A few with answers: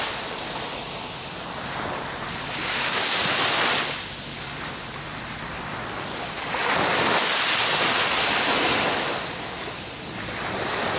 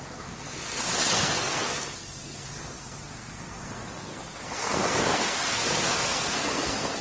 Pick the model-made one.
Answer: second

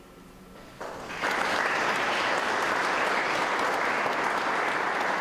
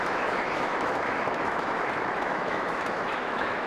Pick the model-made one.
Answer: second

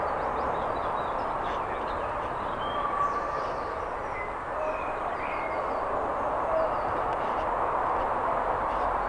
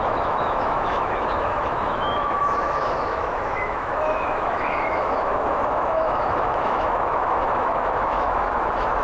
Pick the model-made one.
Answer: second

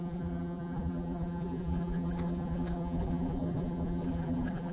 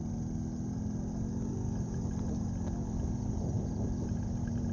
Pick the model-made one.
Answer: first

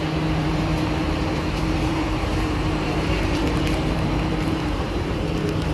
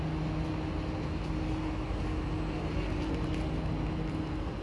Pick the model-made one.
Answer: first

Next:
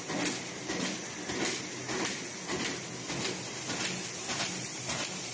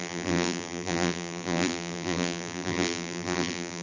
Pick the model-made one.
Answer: second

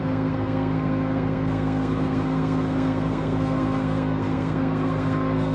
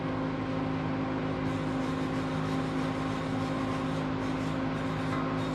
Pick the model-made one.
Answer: first